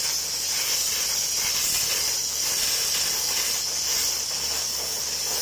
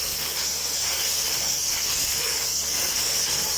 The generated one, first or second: second